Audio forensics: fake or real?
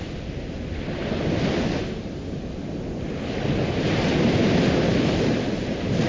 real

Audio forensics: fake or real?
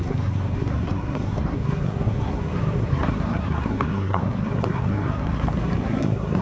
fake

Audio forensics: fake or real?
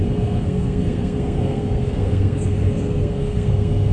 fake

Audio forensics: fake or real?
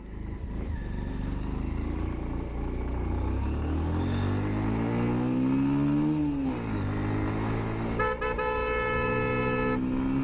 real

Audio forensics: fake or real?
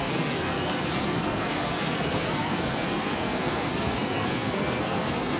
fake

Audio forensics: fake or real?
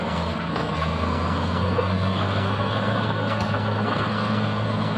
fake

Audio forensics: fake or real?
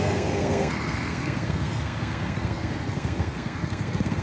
fake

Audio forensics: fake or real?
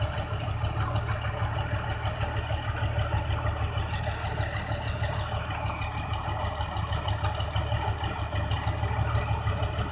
real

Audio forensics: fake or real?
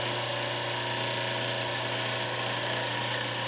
real